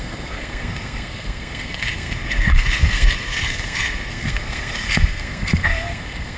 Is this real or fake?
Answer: fake